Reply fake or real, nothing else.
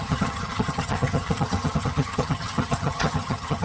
fake